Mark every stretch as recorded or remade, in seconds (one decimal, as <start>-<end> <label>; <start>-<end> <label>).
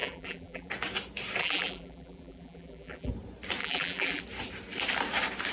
0.0-0.7 remade; 0.7-1.4 recorded; 1.4-3.1 remade; 3.1-3.6 recorded; 3.6-4.2 remade; 4.2-5.5 recorded